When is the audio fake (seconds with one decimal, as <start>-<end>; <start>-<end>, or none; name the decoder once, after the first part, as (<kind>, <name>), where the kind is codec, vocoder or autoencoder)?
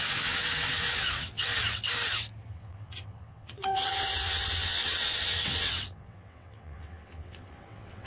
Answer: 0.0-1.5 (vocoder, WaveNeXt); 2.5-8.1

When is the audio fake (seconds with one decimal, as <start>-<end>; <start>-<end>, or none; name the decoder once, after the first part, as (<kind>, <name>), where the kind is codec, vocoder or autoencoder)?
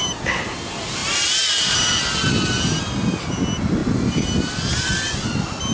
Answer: none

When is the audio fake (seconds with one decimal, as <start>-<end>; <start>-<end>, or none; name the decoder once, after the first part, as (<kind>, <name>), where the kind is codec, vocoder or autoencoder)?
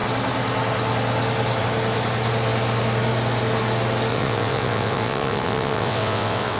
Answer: 4.1-6.6 (vocoder, WaveNeXt)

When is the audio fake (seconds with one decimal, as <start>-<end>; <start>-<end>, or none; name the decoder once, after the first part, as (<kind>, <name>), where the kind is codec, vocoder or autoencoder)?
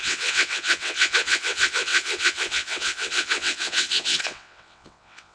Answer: 0.0-5.3 (vocoder, WaveNeXt)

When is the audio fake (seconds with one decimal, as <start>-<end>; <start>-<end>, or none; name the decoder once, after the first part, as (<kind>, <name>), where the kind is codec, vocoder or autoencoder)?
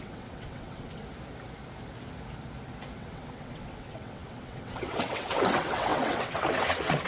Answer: 0.0-1.0 (vocoder, WaveNeXt); 2.9-7.1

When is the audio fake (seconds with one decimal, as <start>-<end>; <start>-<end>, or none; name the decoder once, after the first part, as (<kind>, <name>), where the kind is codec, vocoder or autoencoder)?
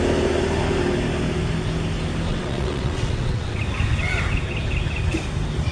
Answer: 2.3-3.6 (vocoder, WaveNeXt)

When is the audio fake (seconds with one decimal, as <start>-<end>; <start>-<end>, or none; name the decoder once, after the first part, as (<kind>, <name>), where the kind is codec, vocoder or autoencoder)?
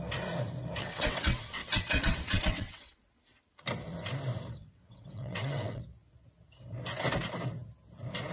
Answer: 0.8-3.0 (vocoder, WaveNeXt); 4.6-5.8